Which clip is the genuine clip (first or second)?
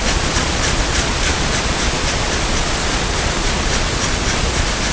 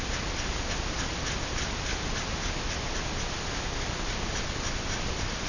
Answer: second